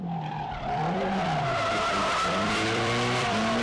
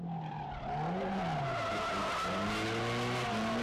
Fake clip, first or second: first